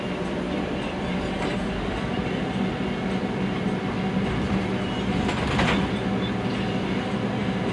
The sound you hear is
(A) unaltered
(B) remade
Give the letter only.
A